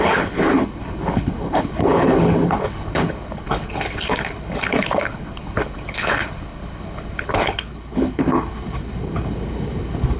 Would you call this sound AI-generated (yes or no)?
yes